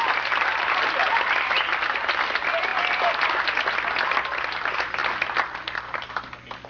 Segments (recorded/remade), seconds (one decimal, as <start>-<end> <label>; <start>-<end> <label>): 0.0-6.7 recorded